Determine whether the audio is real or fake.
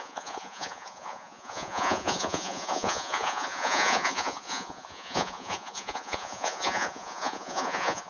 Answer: fake